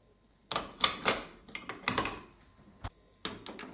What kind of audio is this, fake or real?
real